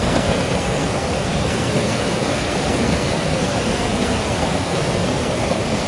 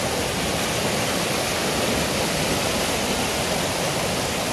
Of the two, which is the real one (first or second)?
second